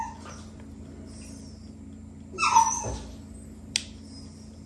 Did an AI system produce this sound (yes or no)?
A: no